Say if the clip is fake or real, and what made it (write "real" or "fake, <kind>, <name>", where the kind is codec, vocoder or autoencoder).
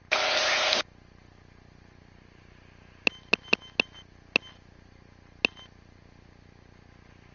real